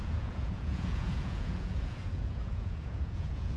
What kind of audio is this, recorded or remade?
remade